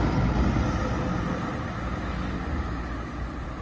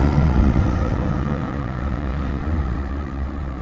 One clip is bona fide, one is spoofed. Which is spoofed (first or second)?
second